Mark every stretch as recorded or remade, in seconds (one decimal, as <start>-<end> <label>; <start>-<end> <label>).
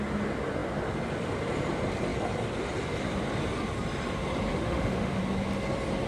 0.0-4.5 recorded; 4.5-5.2 remade; 5.2-6.1 recorded